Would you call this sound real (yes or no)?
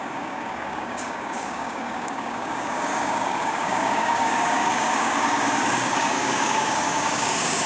no